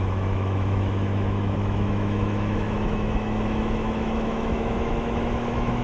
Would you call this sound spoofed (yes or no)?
yes